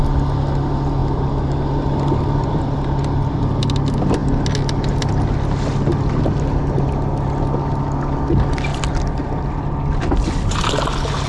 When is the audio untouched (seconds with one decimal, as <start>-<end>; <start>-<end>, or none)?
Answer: 0.0-1.0; 3.6-8.7; 9.6-11.3